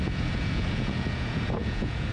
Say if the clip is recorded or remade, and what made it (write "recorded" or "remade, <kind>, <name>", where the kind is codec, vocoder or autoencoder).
remade, vocoder, Vocos